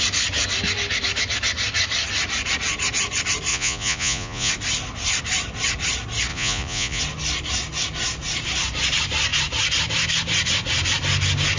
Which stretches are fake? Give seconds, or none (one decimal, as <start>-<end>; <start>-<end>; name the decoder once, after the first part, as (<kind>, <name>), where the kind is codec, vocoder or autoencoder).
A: 3.5-4.5 (vocoder, Vocos); 6.3-7.0